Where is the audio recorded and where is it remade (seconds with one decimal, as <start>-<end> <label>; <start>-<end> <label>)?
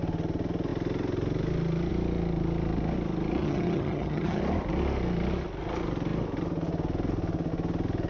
0.0-3.4 recorded; 3.4-4.4 remade; 4.4-8.1 recorded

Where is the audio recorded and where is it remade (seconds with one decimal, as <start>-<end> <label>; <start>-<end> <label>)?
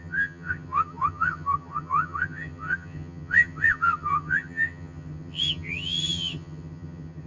0.0-7.3 remade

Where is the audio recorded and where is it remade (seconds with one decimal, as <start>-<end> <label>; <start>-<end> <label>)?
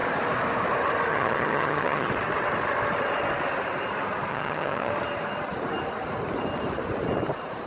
0.0-1.1 recorded; 1.1-2.1 remade; 2.1-4.3 recorded; 4.3-4.9 remade; 4.9-7.7 recorded